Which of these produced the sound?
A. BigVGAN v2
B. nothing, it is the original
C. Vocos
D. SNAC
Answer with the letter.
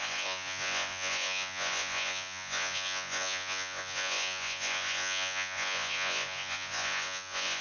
C